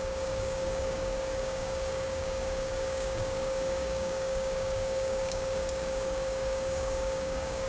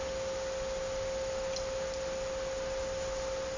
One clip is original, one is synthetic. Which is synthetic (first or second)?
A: first